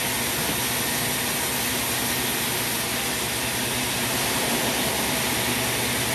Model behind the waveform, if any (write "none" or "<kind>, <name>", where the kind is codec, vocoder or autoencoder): none